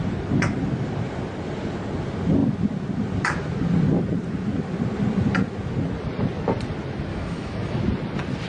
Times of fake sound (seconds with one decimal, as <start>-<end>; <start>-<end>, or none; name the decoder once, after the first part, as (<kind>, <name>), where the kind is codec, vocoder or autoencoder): 7.1-7.8 (autoencoder, DAC-VAE)